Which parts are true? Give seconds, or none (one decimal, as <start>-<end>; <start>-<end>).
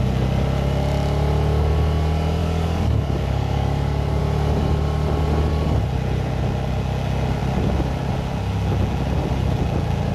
0.0-2.4; 4.2-10.1